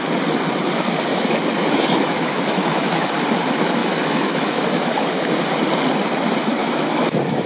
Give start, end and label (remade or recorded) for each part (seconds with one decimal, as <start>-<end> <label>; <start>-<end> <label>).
0.0-1.1 recorded; 1.1-3.1 remade; 3.1-3.8 recorded; 3.8-5.3 remade; 5.3-6.6 recorded; 6.6-7.5 remade